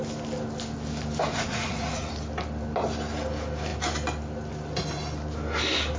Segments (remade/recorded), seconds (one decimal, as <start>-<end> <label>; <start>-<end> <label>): 0.0-1.3 recorded; 1.3-2.1 remade; 2.1-6.0 recorded